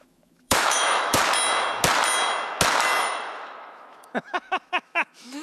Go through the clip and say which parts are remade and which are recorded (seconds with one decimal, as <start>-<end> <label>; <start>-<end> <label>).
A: 0.0-1.2 remade; 1.2-3.0 recorded; 3.0-5.4 remade